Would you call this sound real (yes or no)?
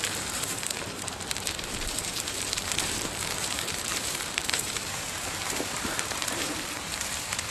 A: no